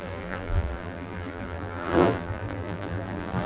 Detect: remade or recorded remade